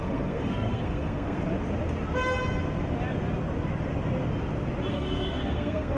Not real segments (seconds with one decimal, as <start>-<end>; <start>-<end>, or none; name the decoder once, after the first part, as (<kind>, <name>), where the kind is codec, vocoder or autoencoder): 0.0-1.4 (codec, SNAC); 4.9-6.0